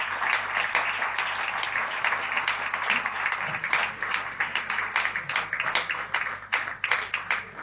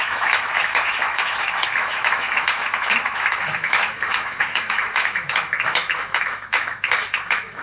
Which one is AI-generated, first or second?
second